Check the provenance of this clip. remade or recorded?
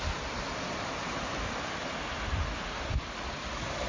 recorded